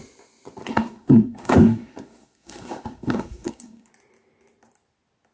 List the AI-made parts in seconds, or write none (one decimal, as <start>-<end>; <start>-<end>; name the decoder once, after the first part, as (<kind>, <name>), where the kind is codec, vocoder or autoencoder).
0.7-3.9 (codec, SNAC)